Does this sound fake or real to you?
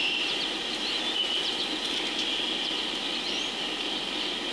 real